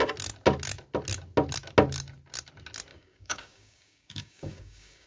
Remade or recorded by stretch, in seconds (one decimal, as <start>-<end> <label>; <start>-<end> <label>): 0.0-2.9 recorded; 2.9-5.1 remade